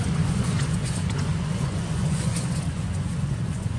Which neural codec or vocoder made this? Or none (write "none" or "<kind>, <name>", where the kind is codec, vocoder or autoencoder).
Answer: vocoder, Vocos